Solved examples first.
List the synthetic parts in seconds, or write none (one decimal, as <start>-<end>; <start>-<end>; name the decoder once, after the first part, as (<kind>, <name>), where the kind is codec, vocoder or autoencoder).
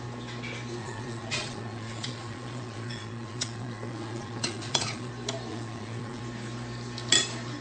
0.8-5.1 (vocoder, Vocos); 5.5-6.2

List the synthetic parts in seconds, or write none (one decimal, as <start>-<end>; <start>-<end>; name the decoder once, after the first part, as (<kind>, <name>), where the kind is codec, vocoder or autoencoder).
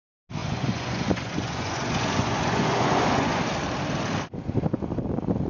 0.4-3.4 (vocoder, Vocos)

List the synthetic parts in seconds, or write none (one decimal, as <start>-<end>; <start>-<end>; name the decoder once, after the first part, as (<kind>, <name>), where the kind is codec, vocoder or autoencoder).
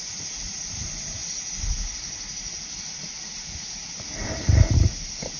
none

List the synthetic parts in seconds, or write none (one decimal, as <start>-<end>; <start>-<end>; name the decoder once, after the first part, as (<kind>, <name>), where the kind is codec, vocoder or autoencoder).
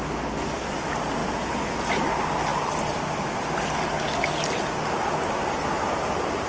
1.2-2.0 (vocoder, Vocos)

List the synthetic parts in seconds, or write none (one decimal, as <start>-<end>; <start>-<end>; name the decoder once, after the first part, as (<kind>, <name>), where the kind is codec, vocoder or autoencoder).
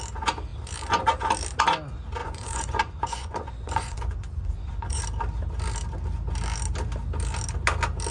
2.2-5.0 (vocoder, Vocos)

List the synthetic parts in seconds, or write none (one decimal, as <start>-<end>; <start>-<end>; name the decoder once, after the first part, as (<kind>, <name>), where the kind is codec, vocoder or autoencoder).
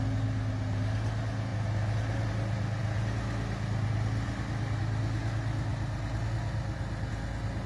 none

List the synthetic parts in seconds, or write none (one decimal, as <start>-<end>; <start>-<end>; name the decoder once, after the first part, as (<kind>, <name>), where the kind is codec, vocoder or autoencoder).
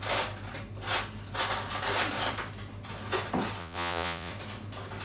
3.6-4.3 (vocoder, Vocos)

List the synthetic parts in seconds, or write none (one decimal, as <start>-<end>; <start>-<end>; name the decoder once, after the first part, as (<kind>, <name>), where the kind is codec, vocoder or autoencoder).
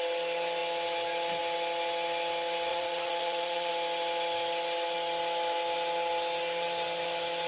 2.7-3.7 (vocoder, Vocos)